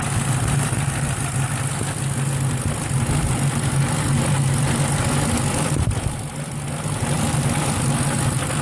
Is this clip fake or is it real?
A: fake